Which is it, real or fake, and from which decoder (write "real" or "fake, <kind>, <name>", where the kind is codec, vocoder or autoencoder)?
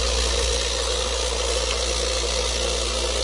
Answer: real